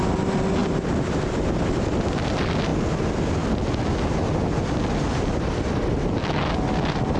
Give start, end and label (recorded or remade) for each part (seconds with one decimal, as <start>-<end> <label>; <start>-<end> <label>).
0.0-7.2 recorded